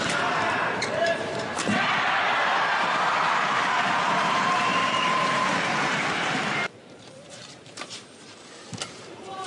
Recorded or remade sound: remade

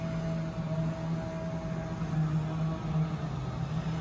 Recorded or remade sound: recorded